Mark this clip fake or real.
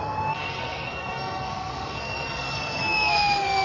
fake